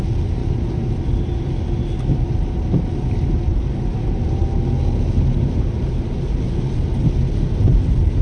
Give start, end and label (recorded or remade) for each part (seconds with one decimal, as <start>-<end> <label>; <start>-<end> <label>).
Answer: 0.0-8.2 recorded